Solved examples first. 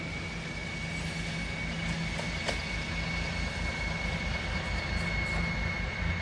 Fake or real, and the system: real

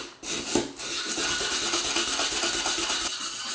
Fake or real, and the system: real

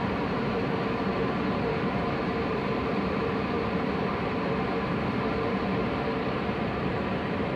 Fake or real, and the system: fake, vocoder, BigVGAN v2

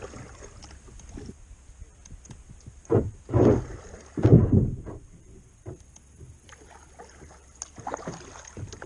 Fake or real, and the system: real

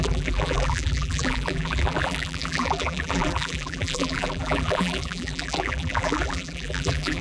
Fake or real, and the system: fake, vocoder, BigVGAN v2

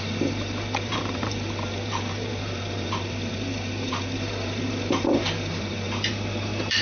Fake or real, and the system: fake, vocoder, BigVGAN v2